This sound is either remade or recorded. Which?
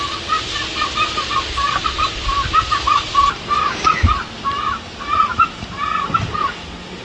recorded